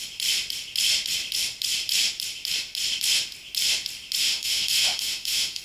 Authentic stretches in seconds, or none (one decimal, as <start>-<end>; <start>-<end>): 0.0-4.2